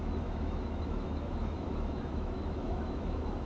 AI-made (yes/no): yes